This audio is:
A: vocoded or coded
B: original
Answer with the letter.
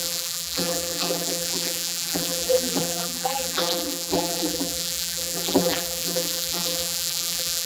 A